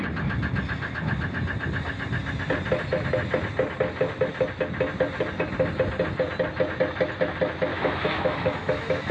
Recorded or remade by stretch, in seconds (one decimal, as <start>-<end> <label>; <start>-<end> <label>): 0.0-7.7 recorded; 7.7-9.1 remade